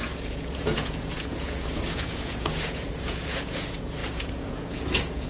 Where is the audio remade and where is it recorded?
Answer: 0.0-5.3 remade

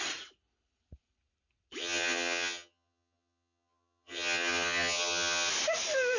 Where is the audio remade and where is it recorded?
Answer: 0.0-1.8 recorded; 1.8-5.5 remade; 5.5-6.2 recorded